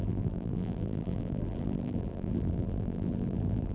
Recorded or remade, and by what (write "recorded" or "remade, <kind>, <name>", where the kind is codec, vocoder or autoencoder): remade, vocoder, BigVGAN v2